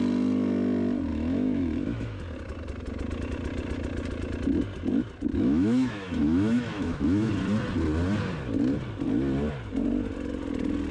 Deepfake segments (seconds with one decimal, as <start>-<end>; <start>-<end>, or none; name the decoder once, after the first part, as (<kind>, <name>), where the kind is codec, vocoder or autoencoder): 1.1-2.2 (autoencoder, DAC-VAE); 5.3-7.3